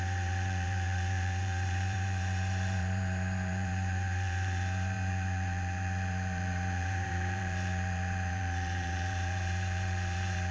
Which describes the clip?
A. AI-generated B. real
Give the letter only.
A